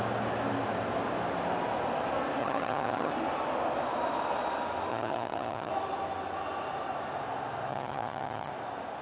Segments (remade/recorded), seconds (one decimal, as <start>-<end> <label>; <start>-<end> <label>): 0.0-2.4 recorded; 2.4-3.1 remade; 3.1-4.9 recorded; 4.9-5.7 remade; 5.7-7.7 recorded; 7.7-8.5 remade; 8.5-9.0 recorded